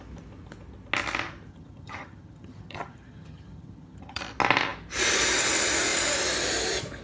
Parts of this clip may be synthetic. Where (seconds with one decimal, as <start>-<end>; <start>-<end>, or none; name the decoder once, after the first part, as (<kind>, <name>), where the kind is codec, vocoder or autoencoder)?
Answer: 1.5-4.2 (vocoder, HiFi-GAN)